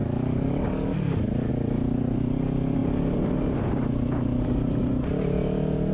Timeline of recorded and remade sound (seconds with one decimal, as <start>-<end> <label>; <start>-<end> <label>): 0.0-1.5 remade; 1.5-5.9 recorded

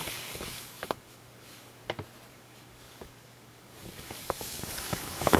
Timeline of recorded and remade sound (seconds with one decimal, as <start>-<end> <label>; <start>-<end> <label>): 0.0-1.8 remade; 1.8-2.3 recorded; 2.3-5.4 remade

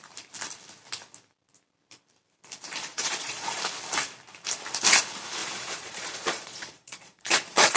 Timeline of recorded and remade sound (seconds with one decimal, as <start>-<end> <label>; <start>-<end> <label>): 0.0-2.9 recorded; 2.9-3.6 remade; 3.6-5.4 recorded; 5.4-7.8 remade